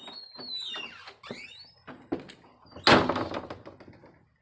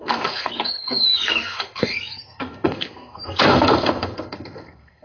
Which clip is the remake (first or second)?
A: second